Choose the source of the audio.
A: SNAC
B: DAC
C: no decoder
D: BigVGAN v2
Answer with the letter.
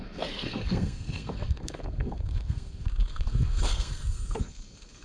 A